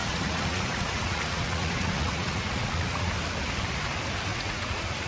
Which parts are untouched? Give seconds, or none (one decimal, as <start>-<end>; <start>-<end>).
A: 3.1-4.3